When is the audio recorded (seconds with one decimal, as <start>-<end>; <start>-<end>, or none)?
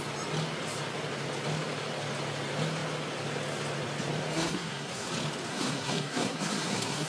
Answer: 0.0-4.3; 5.1-5.5